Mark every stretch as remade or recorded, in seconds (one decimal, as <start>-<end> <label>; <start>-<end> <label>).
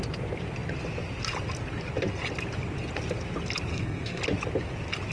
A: 0.0-3.7 recorded; 3.7-4.2 remade; 4.2-5.1 recorded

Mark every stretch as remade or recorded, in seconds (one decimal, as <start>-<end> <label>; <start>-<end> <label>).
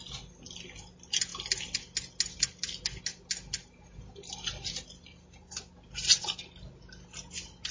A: 0.0-7.7 recorded